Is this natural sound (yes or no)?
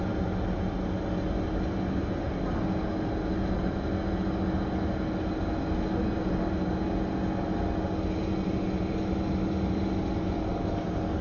yes